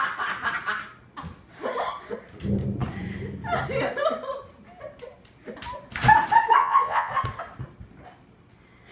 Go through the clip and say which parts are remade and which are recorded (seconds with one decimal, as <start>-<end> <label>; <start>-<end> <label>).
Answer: 0.0-6.6 recorded; 6.6-7.1 remade; 7.1-8.9 recorded